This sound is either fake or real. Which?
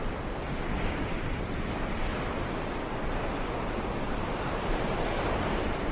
fake